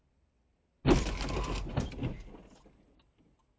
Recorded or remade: recorded